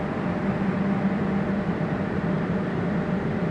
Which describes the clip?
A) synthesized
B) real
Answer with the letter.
B